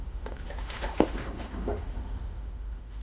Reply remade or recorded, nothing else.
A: remade